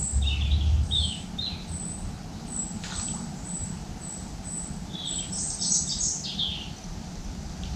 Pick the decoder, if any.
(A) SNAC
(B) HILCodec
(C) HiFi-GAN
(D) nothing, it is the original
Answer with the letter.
D